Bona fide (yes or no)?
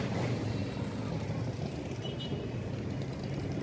yes